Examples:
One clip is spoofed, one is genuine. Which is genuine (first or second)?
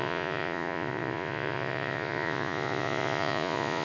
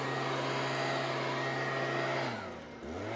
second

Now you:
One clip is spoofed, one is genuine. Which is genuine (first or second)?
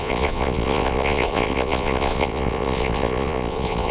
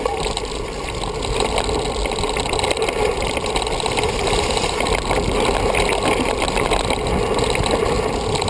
second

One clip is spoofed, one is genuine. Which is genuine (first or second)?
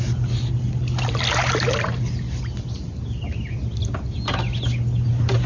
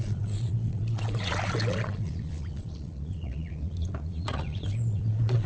first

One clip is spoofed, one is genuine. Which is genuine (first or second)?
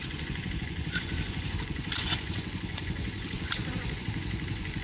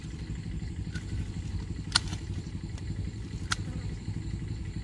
second